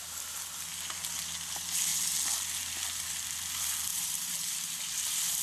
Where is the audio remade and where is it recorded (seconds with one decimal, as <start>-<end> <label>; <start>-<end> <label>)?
0.0-3.9 recorded; 3.9-4.7 remade; 4.7-5.4 recorded

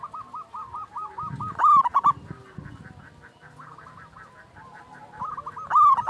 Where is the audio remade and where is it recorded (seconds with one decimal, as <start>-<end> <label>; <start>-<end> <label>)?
0.0-6.1 recorded

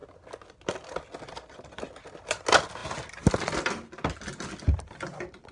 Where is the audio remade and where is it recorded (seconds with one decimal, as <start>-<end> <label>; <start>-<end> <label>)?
0.0-5.5 recorded

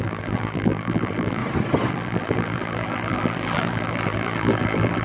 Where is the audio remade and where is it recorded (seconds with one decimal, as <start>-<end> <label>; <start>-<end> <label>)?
0.0-1.4 remade; 1.4-1.9 recorded; 1.9-5.0 remade

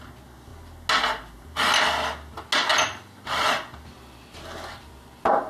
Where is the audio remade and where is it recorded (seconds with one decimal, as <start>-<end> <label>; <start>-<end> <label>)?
0.0-2.7 recorded; 2.7-5.5 remade